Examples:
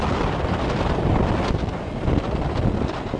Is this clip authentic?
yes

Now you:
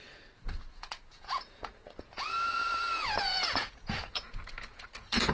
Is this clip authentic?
no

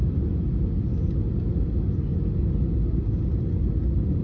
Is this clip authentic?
yes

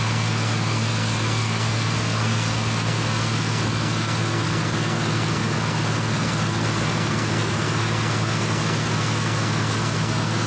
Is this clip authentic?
no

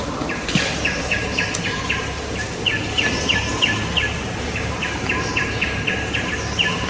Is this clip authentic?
yes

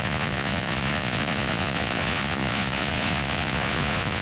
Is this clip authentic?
no